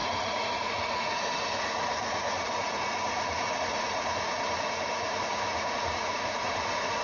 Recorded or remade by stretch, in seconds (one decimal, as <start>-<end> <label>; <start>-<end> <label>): 0.0-7.0 remade